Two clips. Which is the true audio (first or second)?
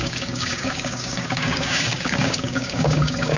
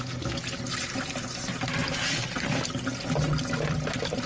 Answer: second